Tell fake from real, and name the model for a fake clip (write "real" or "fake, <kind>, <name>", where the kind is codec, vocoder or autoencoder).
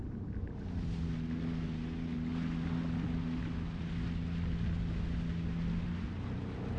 real